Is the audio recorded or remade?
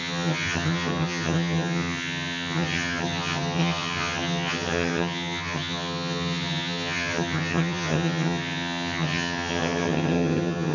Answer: remade